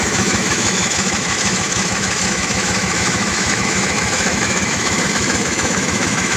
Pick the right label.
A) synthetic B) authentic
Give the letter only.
A